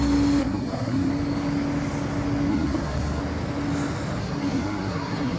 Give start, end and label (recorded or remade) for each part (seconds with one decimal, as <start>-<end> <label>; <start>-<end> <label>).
0.0-0.4 recorded; 0.4-1.1 remade; 1.1-2.5 recorded; 2.5-3.2 remade; 3.2-4.2 recorded; 4.2-5.4 remade